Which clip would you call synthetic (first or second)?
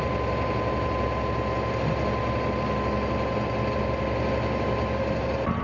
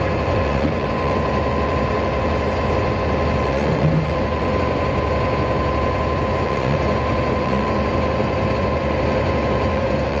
second